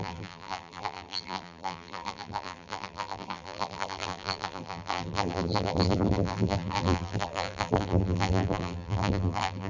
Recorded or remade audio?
remade